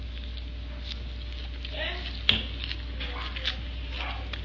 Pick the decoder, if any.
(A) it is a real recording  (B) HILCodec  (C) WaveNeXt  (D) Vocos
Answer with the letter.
A